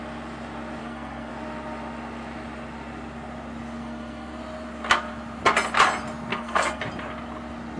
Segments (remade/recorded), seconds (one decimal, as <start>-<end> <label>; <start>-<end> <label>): 0.0-0.8 recorded; 0.8-1.3 remade; 1.3-3.8 recorded; 3.8-4.4 remade; 4.4-6.3 recorded; 6.3-6.8 remade; 6.8-7.8 recorded